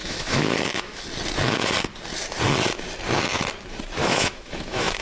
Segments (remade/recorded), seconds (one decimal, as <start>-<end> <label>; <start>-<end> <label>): 0.0-1.0 remade; 1.0-4.0 recorded; 4.0-5.0 remade